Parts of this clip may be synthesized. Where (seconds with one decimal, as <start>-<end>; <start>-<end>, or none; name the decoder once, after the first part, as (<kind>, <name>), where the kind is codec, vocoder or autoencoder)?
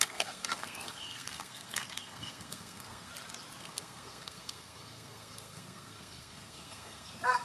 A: 0.0-3.1 (codec, SNAC); 3.6-7.4